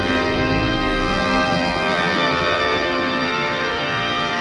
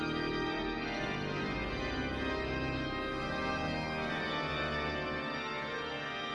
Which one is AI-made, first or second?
first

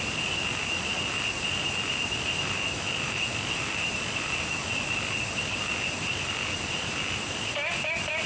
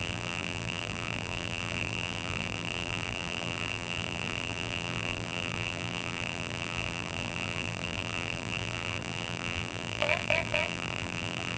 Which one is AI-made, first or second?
second